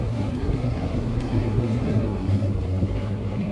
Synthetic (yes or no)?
yes